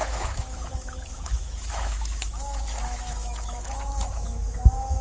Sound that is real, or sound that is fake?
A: fake